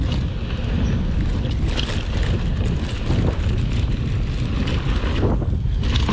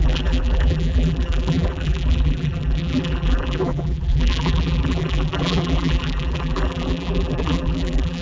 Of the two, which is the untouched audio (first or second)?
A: first